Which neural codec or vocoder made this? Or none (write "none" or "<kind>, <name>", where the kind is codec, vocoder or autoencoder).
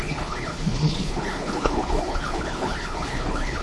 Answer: codec, HILCodec